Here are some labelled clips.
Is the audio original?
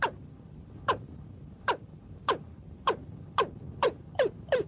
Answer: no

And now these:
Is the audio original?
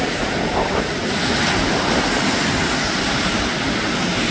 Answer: yes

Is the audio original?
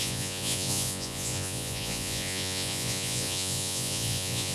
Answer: no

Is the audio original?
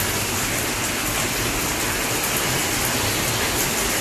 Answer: yes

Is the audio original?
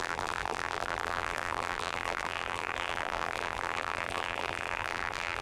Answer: no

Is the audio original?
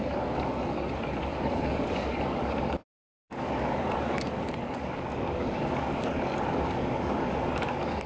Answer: no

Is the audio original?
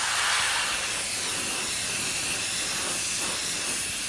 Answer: yes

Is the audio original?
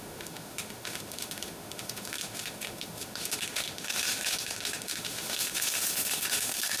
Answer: no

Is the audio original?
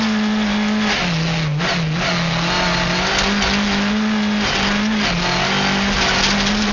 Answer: yes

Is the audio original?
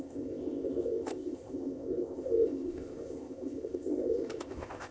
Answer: no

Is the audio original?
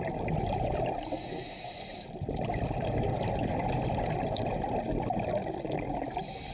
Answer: yes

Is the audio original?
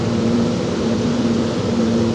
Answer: no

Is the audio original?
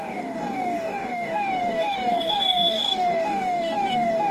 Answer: no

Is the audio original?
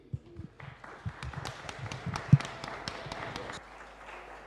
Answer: yes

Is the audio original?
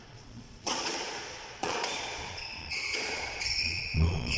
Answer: no